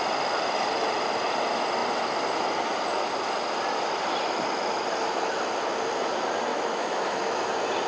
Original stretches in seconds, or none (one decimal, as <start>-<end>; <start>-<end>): 0.0-6.5; 7.4-7.9

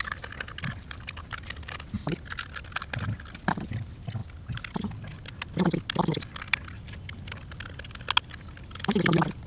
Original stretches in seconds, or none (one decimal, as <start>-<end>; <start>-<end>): 0.0-9.5